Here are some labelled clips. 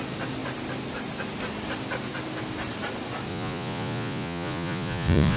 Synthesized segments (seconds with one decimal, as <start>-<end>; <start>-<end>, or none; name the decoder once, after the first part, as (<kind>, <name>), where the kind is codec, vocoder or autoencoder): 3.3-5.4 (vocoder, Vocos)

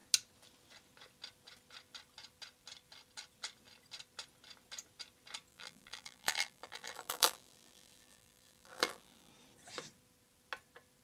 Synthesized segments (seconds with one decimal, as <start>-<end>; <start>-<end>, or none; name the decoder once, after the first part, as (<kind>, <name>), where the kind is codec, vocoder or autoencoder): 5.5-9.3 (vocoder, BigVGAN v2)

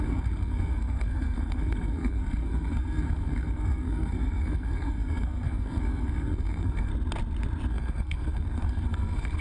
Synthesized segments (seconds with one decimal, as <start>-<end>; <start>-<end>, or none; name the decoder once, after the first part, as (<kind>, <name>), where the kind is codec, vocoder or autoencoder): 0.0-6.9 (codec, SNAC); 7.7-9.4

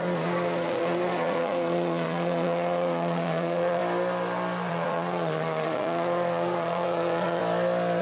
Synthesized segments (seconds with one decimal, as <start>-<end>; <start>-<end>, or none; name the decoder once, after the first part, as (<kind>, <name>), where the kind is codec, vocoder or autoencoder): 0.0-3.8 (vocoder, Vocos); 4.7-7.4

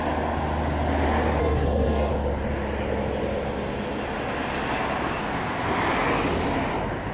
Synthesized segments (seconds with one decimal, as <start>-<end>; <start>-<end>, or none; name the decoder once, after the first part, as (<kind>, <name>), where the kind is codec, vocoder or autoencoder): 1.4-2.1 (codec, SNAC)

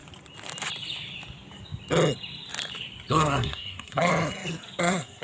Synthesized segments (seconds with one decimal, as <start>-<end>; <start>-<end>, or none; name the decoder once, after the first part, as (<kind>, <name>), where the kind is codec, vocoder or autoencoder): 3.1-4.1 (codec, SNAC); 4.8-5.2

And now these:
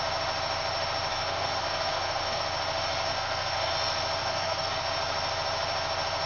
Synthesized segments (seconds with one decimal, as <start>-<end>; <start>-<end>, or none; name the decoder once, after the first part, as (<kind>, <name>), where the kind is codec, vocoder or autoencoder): 1.1-2.4 (codec, SNAC); 3.1-3.7; 4.2-4.8